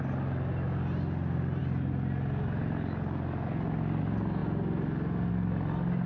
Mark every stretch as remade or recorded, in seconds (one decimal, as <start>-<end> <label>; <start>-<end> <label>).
0.0-6.1 recorded